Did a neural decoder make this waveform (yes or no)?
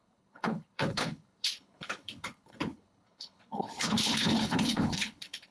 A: yes